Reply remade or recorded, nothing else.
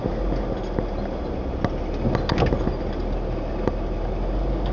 recorded